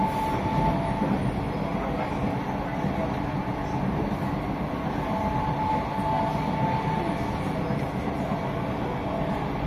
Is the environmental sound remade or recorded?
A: recorded